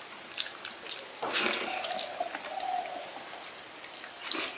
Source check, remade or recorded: recorded